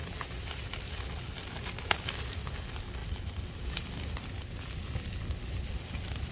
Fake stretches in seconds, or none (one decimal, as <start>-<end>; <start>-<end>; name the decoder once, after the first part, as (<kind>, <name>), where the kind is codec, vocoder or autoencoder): none

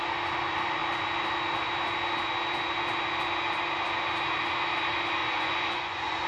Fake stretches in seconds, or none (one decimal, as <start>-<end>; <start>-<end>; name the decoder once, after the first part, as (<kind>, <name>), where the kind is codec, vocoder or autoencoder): 5.2-6.3 (vocoder, Vocos)